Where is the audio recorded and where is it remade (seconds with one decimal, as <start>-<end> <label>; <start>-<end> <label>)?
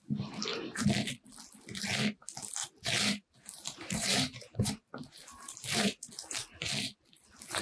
0.0-2.6 recorded; 2.6-6.1 remade; 6.1-7.6 recorded